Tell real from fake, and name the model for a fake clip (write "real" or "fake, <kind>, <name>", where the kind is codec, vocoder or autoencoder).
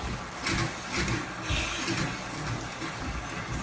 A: real